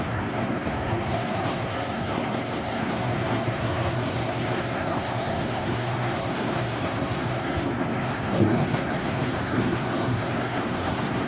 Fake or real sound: fake